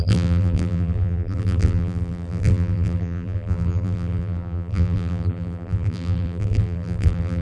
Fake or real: fake